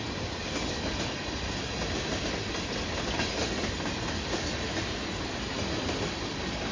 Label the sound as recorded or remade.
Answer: recorded